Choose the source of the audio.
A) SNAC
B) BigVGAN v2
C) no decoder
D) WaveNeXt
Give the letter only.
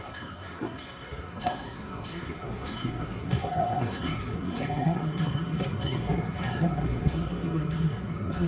A